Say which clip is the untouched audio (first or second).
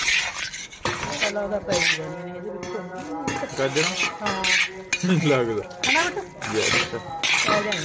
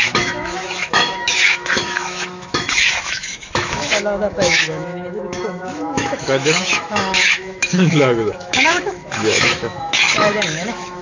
first